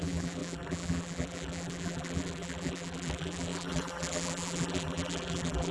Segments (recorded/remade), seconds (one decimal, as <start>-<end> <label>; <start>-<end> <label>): 0.0-5.7 remade